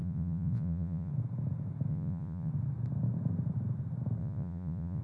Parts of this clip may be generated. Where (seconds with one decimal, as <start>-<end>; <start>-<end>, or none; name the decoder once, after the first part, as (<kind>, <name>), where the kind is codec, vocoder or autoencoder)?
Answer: 0.0-1.1 (vocoder, Vocos); 1.9-2.5; 4.2-5.0